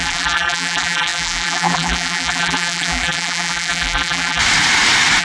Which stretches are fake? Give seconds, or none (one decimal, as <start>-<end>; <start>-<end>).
0.0-4.4